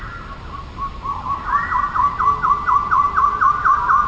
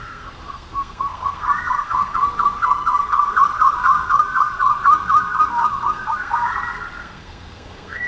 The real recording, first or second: first